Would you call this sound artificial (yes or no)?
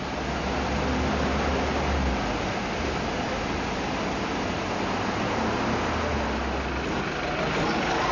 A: no